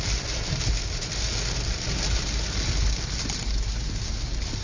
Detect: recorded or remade recorded